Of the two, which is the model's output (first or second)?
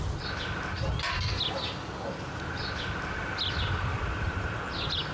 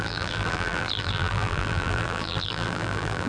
second